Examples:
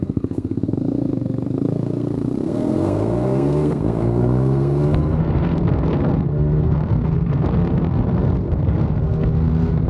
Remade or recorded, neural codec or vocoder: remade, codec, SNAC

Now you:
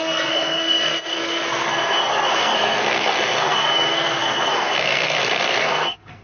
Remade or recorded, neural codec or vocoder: remade, codec, SNAC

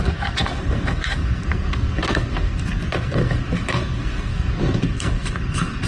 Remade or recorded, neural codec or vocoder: remade, codec, SNAC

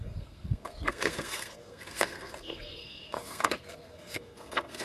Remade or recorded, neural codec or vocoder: remade, codec, SNAC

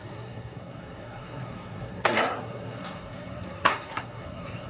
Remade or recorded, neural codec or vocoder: remade, codec, SNAC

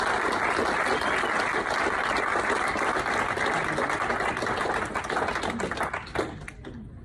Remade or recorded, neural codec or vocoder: recorded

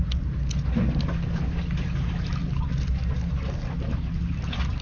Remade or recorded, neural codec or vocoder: recorded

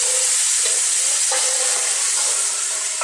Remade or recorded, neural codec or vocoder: recorded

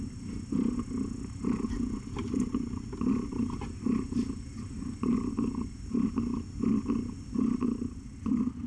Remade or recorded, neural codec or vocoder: recorded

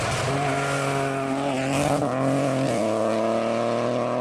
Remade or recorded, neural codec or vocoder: recorded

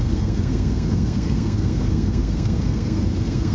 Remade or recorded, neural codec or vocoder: remade, codec, SNAC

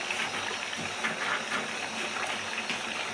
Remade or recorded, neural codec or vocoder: recorded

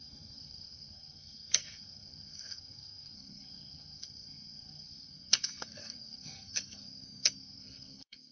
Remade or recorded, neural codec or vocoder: remade, codec, SNAC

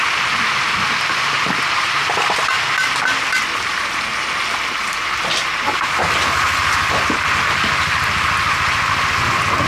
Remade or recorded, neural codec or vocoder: recorded